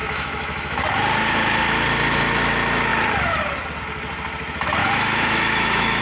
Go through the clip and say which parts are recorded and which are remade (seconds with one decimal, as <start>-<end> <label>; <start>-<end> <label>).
0.0-0.9 remade; 0.9-4.8 recorded; 4.8-6.0 remade